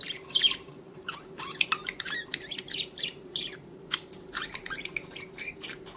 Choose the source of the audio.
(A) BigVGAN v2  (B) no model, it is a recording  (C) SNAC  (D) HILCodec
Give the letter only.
A